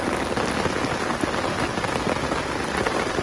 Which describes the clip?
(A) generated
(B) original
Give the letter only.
B